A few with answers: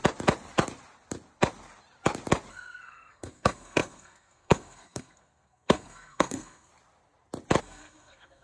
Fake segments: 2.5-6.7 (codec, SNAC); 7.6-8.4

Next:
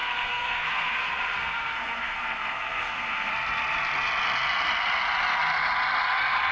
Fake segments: 0.0-3.3 (codec, SNAC)

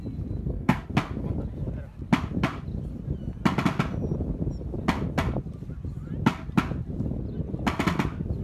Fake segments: 0.4-0.9 (codec, SNAC)

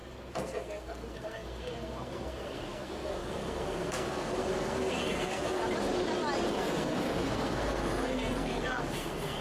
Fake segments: 0.0-5.6 (codec, SNAC); 6.5-9.4

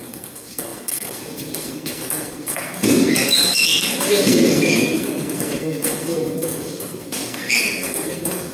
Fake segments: 0.0-8.5 (codec, SNAC)

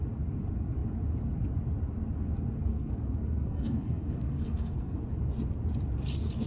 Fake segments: 2.7-5.0 (codec, SNAC)

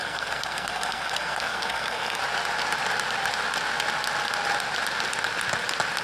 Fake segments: 0.0-2.2 (codec, SNAC)